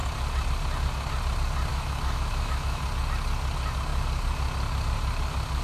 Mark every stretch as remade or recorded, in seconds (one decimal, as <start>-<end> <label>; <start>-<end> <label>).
0.0-1.7 recorded; 1.7-2.8 remade; 2.8-5.6 recorded